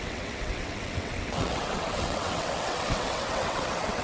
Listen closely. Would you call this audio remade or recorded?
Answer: remade